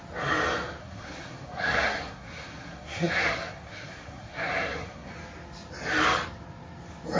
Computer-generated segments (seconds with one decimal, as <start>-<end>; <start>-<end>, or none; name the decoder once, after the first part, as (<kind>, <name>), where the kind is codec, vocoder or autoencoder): 0.8-5.1 (codec, SNAC)